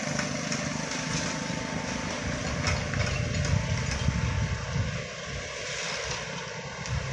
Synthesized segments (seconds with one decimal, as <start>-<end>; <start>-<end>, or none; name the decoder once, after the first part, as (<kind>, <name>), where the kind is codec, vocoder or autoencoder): none

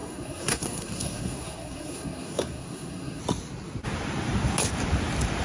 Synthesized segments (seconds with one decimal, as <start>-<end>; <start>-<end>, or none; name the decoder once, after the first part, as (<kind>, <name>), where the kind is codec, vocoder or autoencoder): 0.0-3.2 (codec, SNAC)

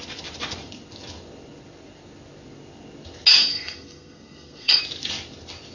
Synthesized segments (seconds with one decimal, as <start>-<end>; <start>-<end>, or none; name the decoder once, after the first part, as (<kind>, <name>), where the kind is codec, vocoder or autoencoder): 3.5-4.8 (codec, SNAC)

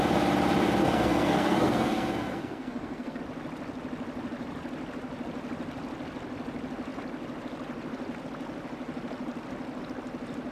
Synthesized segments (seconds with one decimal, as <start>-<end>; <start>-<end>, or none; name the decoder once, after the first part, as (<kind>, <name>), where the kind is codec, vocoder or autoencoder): 0.8-3.2 (codec, SNAC)

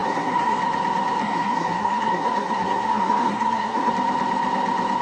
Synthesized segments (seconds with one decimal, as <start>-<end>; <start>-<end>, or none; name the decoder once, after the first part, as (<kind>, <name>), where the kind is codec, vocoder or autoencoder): 0.0-0.6 (codec, SNAC); 1.2-3.9

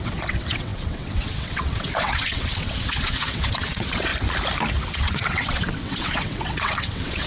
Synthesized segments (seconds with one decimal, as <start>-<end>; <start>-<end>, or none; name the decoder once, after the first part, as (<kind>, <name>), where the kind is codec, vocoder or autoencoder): 0.0-4.1 (vocoder, WaveNeXt); 4.9-7.3